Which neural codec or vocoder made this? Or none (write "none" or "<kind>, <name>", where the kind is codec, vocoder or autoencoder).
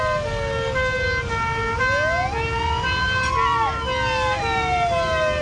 none